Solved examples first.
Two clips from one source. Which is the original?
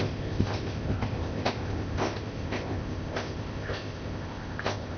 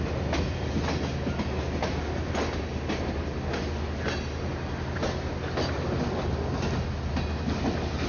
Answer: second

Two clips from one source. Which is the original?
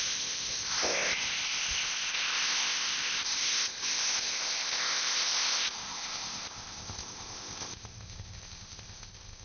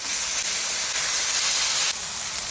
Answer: second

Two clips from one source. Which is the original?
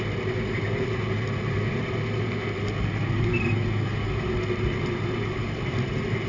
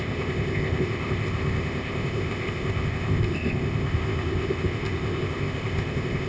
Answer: first